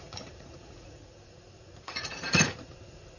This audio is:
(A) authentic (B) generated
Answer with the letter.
B